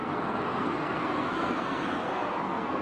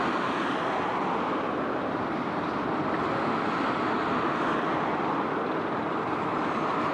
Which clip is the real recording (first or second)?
second